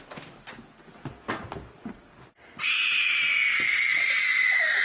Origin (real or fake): real